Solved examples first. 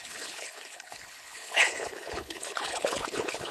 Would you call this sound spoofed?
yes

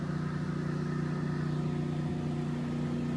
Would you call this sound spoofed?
no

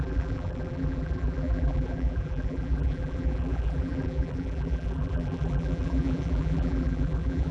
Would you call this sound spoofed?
yes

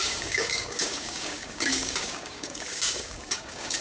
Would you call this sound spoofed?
yes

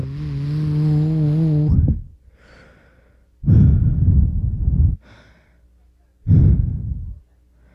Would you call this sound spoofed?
no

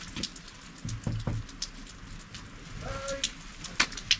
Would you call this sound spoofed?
no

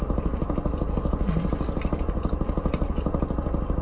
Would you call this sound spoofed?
no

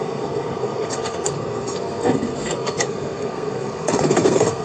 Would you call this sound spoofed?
yes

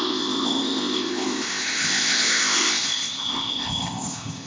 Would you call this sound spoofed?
yes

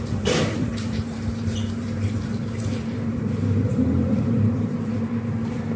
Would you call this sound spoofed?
yes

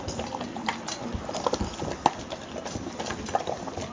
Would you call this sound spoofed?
no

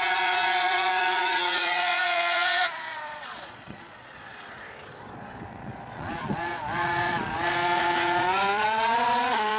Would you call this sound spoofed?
yes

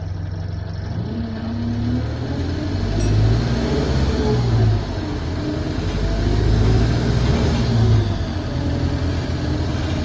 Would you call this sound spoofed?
no